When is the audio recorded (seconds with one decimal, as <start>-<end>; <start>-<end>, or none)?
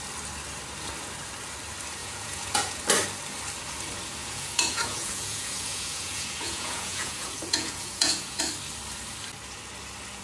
0.0-2.0; 2.8-4.2; 8.4-10.2